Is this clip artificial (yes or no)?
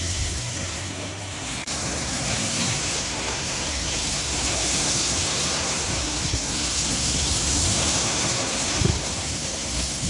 yes